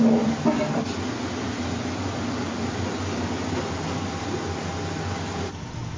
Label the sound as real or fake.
real